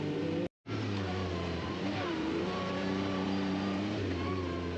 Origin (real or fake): fake